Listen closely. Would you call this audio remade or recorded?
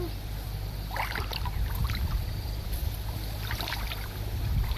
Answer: remade